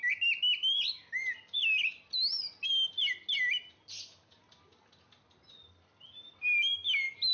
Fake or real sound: real